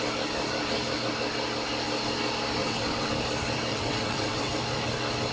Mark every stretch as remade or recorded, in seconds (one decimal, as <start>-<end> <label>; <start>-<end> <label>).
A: 0.0-2.6 recorded; 2.6-3.1 remade; 3.1-3.7 recorded; 3.7-4.5 remade; 4.5-5.3 recorded